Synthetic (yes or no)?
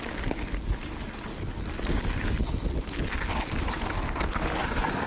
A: no